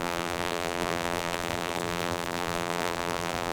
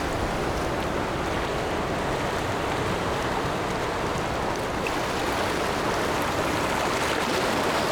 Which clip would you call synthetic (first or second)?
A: first